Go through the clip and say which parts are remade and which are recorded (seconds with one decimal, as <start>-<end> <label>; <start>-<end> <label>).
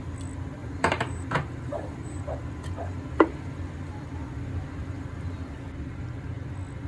0.0-0.6 recorded; 0.6-2.4 remade; 2.4-6.9 recorded